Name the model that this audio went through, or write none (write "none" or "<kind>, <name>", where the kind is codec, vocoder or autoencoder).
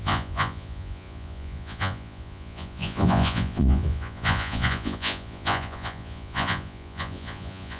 vocoder, Vocos